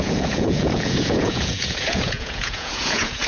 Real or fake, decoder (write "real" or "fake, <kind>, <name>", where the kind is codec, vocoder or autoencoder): fake, vocoder, Vocos